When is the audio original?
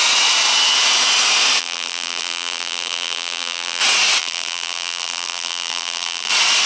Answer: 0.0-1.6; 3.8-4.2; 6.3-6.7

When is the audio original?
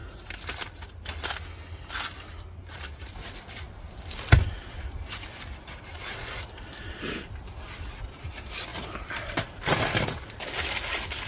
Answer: 1.3-8.7; 9.8-11.3